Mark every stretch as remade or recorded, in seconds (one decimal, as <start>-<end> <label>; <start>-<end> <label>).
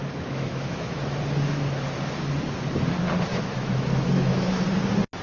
0.0-1.2 remade; 1.2-3.3 recorded; 3.3-4.6 remade; 4.6-5.2 recorded